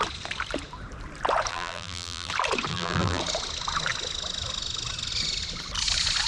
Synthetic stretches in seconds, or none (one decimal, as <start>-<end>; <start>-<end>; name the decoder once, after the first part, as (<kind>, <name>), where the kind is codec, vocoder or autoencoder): 1.5-2.3 (vocoder, BigVGAN v2); 2.7-3.2